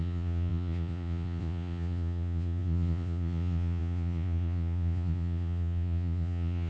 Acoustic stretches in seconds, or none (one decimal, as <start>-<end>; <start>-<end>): none

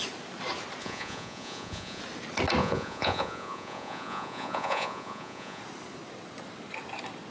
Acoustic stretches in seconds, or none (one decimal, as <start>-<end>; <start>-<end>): 0.0-0.8; 2.0-2.6; 5.6-7.3

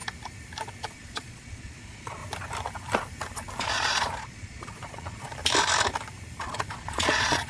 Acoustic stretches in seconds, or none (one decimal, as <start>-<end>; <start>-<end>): 0.0-0.8; 2.2-3.6; 5.3-6.4

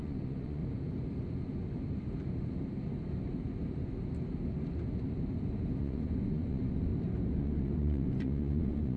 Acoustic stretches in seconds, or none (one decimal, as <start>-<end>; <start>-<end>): 0.6-5.8; 6.9-7.4

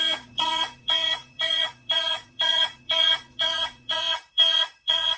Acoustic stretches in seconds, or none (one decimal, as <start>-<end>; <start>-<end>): none

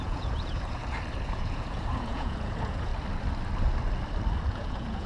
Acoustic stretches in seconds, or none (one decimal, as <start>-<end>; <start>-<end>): 0.8-1.3; 2.9-4.5

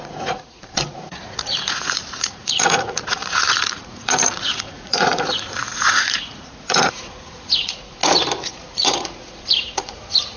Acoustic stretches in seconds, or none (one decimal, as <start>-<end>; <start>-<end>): 8.0-8.5

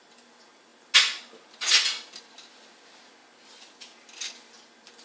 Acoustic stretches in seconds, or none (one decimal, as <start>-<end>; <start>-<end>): 0.0-5.0